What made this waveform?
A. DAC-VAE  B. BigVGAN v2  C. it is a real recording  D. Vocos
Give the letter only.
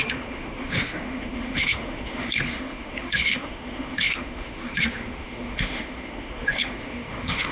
A